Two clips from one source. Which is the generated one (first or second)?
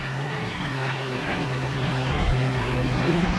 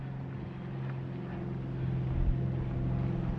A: first